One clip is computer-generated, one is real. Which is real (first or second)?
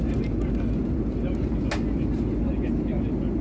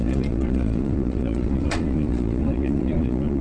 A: first